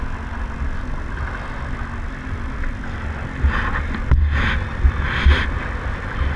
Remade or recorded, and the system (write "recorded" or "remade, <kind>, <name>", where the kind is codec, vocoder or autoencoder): recorded